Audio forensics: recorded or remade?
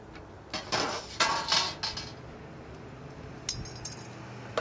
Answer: recorded